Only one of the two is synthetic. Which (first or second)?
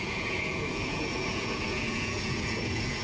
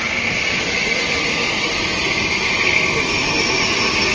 first